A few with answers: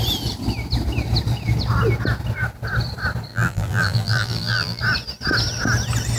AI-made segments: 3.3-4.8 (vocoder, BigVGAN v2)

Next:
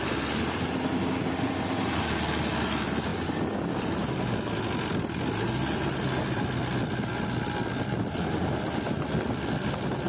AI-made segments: none

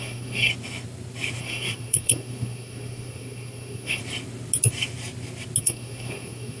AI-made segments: 0.0-0.5 (codec, SNAC); 1.4-4.0; 5.6-6.6

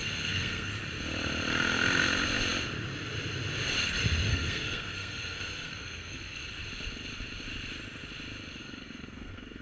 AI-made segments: 0.0-0.7 (codec, SNAC); 4.3-6.4; 8.6-9.6

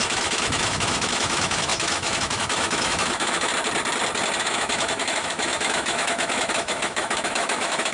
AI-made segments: 0.0-3.5 (autoencoder, DAC-VAE); 4.4-7.9